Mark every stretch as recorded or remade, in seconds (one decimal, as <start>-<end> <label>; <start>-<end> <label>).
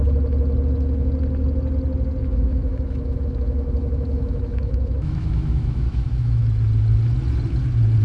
0.0-2.2 recorded; 2.2-6.4 remade; 6.4-8.0 recorded